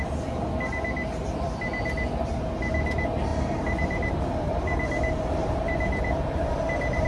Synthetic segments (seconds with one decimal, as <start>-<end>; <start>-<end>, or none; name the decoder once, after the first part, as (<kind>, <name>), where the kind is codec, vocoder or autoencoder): 3.3-7.1 (vocoder, BigVGAN v2)